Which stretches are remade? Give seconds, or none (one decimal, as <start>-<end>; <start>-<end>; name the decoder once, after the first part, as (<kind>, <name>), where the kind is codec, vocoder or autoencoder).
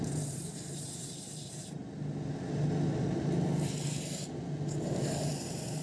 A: 0.0-1.8 (vocoder, BigVGAN v2); 5.3-5.8